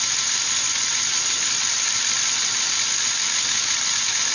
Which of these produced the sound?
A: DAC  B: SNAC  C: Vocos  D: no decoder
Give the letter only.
D